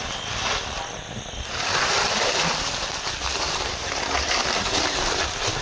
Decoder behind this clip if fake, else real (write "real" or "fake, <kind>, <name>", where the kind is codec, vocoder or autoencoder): real